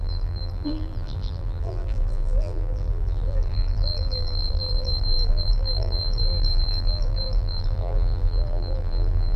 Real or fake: fake